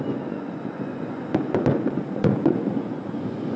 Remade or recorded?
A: remade